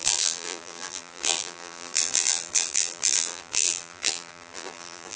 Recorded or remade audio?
remade